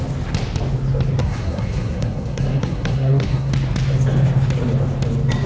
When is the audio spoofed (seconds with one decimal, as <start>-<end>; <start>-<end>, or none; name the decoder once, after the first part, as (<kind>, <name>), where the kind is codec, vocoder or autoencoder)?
1.2-3.5 (codec, SNAC)